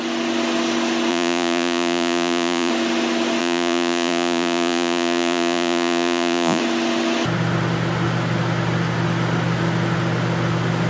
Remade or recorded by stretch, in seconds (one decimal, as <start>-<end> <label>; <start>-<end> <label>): 0.0-1.1 recorded; 1.1-2.7 remade; 2.7-3.4 recorded; 3.4-6.6 remade; 6.6-10.9 recorded